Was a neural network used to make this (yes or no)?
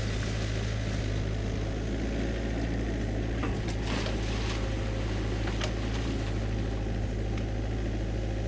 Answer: no